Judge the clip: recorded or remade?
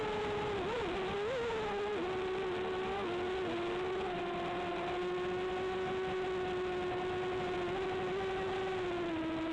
recorded